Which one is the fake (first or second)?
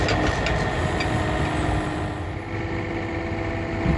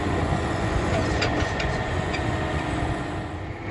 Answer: second